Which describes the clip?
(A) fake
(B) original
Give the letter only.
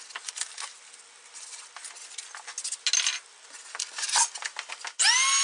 B